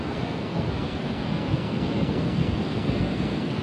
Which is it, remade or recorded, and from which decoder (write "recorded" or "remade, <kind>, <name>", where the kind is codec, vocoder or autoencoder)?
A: remade, codec, SNAC